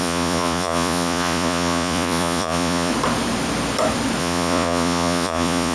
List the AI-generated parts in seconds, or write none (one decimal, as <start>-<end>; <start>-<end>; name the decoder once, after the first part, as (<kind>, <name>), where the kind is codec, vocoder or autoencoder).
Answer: 0.0-2.9 (vocoder, Vocos); 4.2-5.7